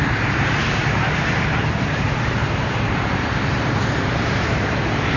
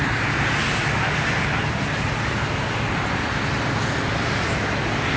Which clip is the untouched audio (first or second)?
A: second